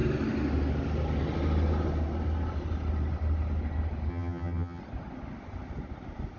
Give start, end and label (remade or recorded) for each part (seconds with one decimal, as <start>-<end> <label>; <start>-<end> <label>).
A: 0.0-4.1 recorded; 4.1-4.8 remade; 4.8-6.4 recorded